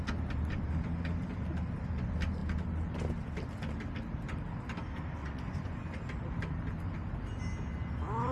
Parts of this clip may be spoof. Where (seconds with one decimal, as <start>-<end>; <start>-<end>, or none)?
5.2-5.9